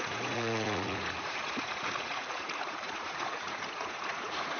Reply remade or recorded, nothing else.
remade